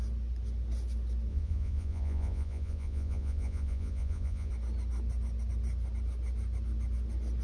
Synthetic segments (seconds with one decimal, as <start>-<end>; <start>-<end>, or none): 1.3-4.5